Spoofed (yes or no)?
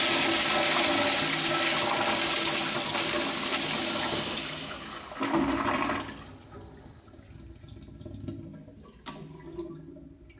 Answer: no